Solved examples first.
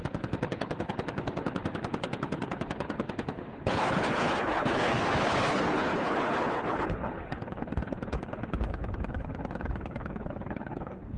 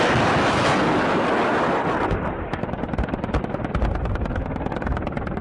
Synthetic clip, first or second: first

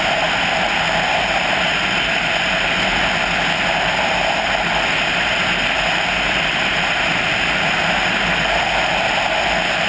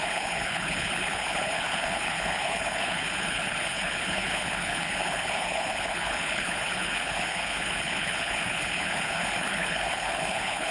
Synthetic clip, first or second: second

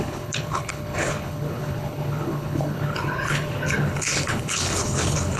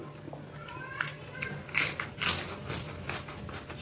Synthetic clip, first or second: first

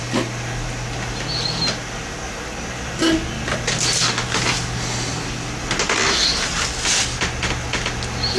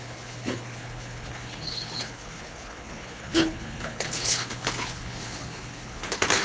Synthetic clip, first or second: second